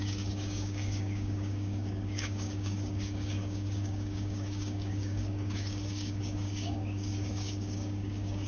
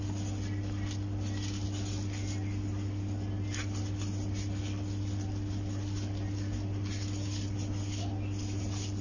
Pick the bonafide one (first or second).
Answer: second